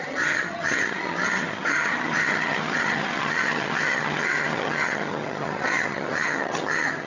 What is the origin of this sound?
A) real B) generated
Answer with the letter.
B